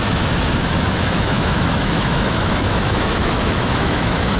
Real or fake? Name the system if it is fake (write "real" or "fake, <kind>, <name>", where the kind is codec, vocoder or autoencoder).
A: fake, autoencoder, DAC-VAE